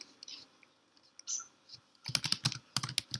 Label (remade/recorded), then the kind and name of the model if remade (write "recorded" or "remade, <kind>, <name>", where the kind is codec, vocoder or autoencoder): recorded